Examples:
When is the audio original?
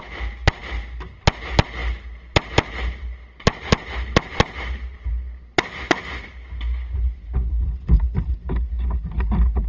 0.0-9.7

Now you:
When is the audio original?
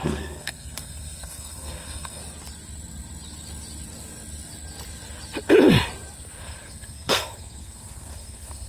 2.2-6.4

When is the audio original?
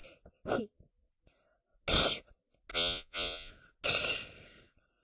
0.0-2.7; 3.5-5.0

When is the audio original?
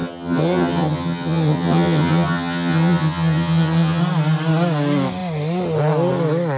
4.0-6.6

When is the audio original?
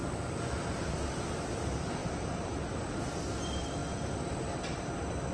0.0-2.0; 3.0-5.3